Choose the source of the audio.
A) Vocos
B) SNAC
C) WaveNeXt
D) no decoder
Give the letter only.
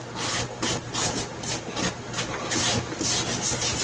D